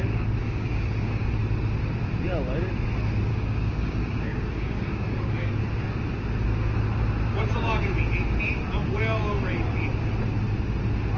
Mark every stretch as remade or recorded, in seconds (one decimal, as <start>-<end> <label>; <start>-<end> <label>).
0.0-0.4 recorded; 0.4-1.3 remade; 1.3-3.3 recorded; 3.3-5.5 remade; 5.5-11.2 recorded